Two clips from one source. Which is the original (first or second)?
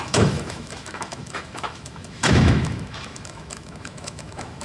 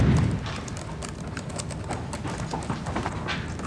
second